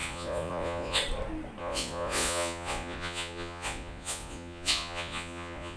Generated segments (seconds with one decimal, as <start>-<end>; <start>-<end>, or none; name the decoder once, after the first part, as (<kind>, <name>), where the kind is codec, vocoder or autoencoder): 0.0-1.0 (vocoder, Vocos); 1.6-5.8